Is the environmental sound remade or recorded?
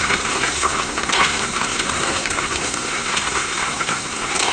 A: remade